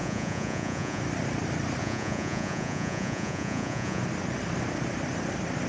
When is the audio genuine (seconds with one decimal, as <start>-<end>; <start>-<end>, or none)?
1.0-1.8; 4.0-5.7